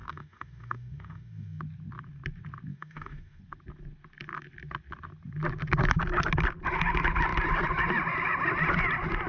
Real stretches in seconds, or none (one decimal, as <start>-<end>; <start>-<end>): 1.6-2.7; 3.4-9.3